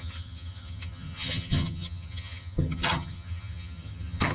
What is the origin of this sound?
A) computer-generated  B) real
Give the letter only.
A